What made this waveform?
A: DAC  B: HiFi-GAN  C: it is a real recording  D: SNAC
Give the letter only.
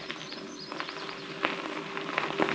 C